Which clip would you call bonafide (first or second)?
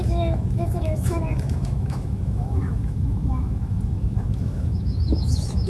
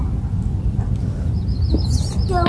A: second